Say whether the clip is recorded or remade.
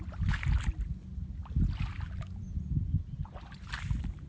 recorded